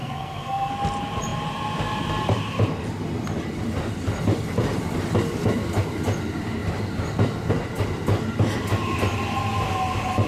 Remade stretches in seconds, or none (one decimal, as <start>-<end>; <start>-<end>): 0.0-0.7